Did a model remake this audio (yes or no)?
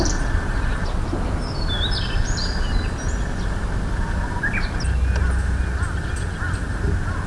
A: no